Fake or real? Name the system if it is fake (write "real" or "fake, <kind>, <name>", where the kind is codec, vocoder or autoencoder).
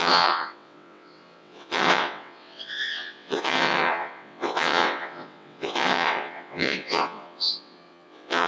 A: fake, vocoder, WaveNeXt